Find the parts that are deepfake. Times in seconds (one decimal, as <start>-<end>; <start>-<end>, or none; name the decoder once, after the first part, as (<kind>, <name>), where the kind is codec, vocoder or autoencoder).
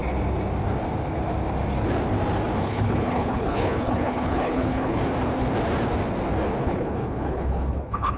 2.6-5.0 (codec, HILCodec); 6.6-8.2